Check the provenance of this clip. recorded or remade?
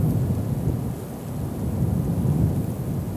recorded